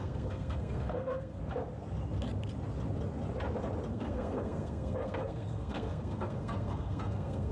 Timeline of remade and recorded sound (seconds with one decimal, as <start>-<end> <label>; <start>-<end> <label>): 0.0-1.4 remade; 1.4-3.9 recorded; 3.9-7.5 remade